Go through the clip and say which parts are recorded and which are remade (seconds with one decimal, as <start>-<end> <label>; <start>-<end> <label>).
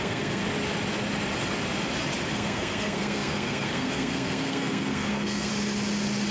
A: 0.0-0.4 remade; 0.4-2.3 recorded; 2.3-5.5 remade; 5.5-6.3 recorded